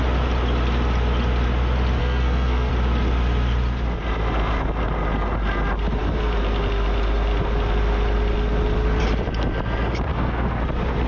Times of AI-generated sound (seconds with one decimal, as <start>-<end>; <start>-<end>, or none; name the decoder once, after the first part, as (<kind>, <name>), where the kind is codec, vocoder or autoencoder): 2.0-2.7 (codec, SNAC); 10.1-10.6